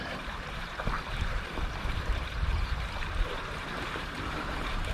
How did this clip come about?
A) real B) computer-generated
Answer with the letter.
B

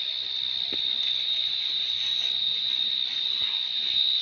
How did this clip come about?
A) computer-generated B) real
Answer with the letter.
A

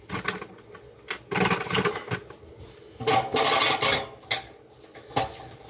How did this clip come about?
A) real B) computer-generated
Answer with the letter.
A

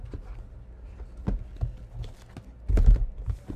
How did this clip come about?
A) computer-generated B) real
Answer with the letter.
B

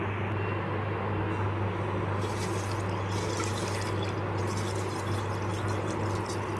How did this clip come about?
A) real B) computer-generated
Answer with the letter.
A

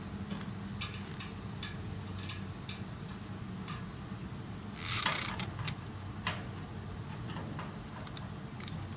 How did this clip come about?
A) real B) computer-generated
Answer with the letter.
A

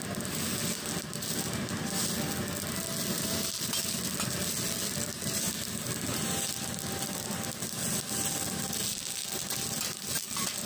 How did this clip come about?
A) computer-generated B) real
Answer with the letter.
B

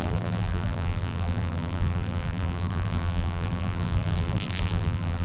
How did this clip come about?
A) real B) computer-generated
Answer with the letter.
B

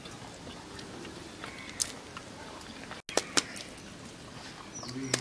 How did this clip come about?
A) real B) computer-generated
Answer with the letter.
A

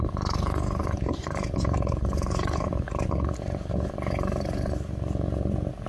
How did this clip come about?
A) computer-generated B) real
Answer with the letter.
A